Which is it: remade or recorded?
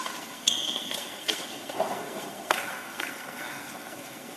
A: remade